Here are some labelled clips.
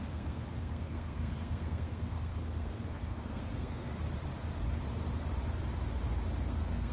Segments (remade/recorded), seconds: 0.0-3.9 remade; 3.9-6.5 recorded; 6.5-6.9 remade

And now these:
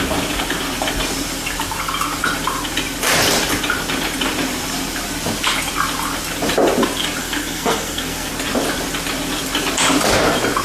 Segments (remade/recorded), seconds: 0.0-7.2 recorded; 7.2-8.3 remade; 8.3-10.6 recorded

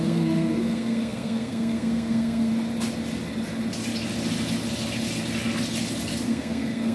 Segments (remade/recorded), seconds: 0.0-2.5 remade; 2.5-6.3 recorded; 6.3-6.9 remade